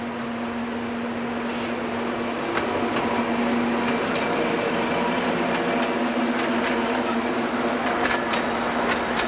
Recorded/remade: recorded